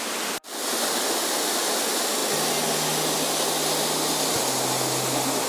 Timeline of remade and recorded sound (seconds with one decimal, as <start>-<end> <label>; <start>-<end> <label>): 0.0-5.5 recorded